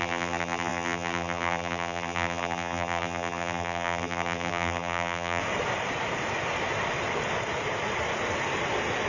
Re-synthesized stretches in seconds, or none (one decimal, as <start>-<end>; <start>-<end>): 0.0-5.4